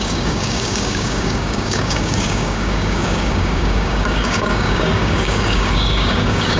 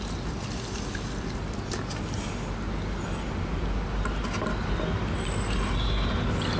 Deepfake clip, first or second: first